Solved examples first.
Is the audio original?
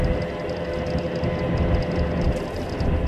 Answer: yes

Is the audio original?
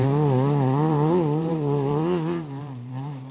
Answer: no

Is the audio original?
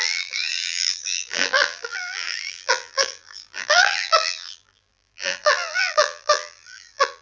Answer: no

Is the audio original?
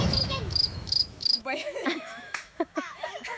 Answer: no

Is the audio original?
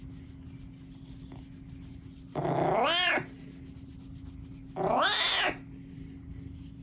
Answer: yes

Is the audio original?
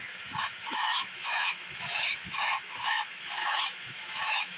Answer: no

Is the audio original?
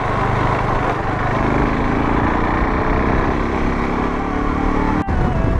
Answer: yes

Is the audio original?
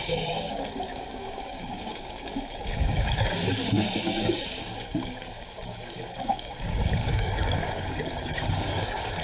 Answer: no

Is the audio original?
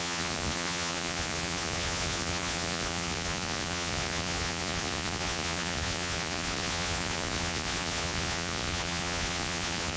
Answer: no